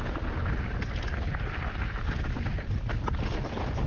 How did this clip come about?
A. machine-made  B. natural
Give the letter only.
B